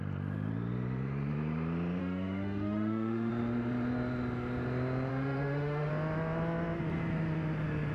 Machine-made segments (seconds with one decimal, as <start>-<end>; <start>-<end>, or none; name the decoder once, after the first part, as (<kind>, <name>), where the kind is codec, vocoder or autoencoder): 2.0-3.3 (autoencoder, DAC-VAE); 5.1-5.9

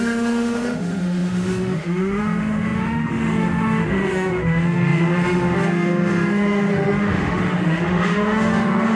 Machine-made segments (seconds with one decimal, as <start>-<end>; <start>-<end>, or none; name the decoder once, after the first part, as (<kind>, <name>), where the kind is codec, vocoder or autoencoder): 0.0-9.0 (autoencoder, DAC-VAE)

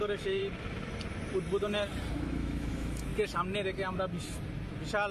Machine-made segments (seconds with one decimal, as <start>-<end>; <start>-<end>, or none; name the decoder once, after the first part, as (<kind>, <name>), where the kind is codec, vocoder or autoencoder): 0.0-0.4 (autoencoder, DAC-VAE); 2.1-3.1

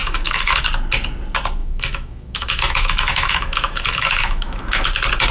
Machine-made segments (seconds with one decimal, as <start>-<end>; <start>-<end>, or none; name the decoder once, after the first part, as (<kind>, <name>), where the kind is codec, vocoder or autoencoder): 0.0-0.6 (autoencoder, DAC-VAE); 1.6-4.8

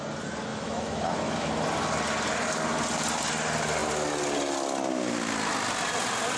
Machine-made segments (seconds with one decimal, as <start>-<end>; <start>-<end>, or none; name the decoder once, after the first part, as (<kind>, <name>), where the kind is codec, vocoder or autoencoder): 0.5-1.5 (autoencoder, DAC-VAE)